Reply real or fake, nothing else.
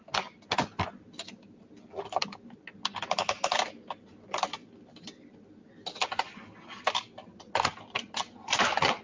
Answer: real